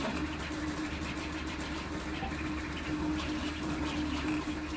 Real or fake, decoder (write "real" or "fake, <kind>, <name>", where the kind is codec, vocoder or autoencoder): real